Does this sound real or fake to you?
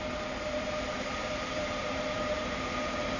fake